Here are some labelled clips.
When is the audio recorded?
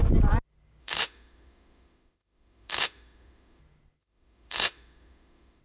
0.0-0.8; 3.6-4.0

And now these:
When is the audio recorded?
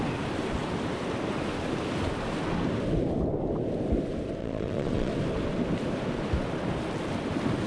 0.0-4.4; 5.1-7.7